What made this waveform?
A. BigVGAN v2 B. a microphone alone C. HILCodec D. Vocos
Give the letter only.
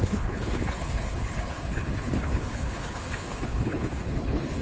C